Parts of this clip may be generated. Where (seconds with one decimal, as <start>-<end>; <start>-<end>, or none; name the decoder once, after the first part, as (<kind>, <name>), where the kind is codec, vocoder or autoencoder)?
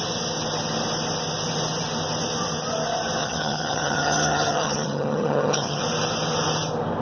3.2-5.8 (vocoder, HiFi-GAN)